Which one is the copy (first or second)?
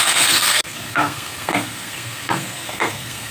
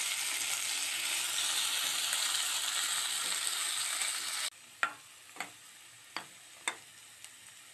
first